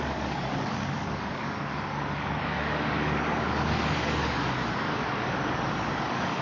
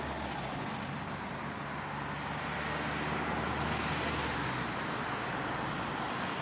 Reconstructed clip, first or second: first